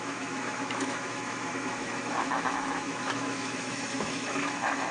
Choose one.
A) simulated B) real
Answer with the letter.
A